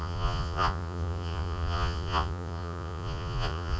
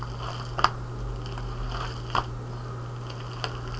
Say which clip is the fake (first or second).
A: first